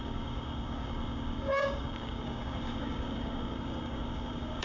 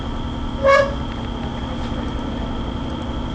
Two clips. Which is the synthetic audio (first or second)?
first